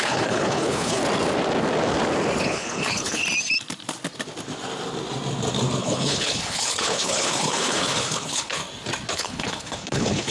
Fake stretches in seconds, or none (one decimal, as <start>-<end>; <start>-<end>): 0.0-1.0; 2.4-3.2; 5.8-8.6; 9.1-10.3